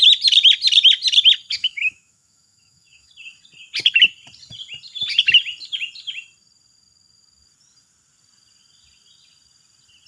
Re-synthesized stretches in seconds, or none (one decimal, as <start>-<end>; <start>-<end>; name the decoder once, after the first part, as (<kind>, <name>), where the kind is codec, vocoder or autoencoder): 1.6-3.1 (autoencoder, DAC-VAE)